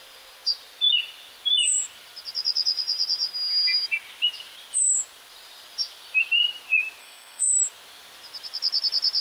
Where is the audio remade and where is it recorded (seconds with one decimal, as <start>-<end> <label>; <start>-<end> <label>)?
0.0-7.0 recorded; 7.0-7.5 remade; 7.5-9.2 recorded